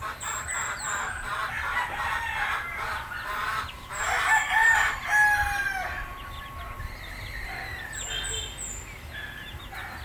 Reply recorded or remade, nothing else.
recorded